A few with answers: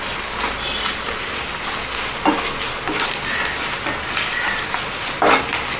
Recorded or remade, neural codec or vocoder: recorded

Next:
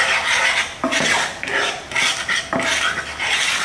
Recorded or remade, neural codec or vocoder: recorded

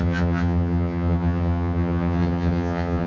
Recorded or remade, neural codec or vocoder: remade, vocoder, HiFi-GAN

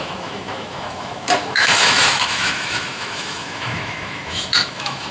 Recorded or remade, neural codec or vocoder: remade, autoencoder, DAC-VAE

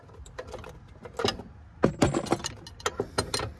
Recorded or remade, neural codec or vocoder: recorded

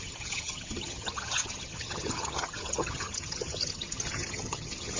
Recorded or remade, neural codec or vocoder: remade, vocoder, HiFi-GAN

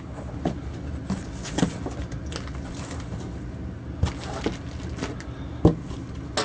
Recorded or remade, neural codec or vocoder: recorded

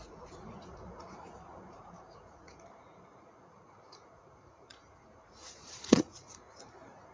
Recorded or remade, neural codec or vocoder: remade, vocoder, Vocos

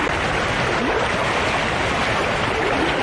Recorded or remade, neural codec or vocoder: recorded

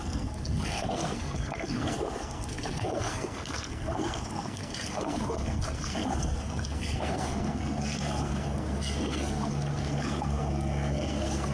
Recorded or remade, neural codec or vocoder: remade, codec, SNAC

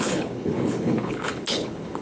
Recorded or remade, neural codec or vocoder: remade, codec, HILCodec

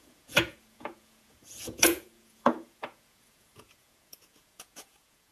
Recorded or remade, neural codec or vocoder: remade, vocoder, Vocos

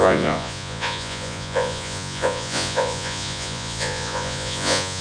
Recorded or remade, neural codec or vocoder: remade, vocoder, Vocos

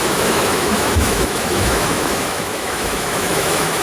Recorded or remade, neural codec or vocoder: remade, autoencoder, DAC-VAE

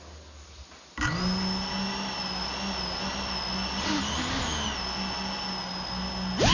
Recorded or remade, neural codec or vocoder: recorded